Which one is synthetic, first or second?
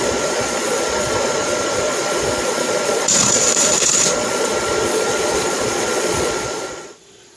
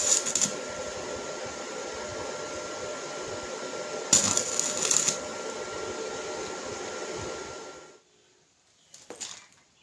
first